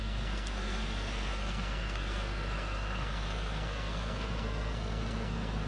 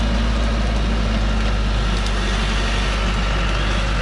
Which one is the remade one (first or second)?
first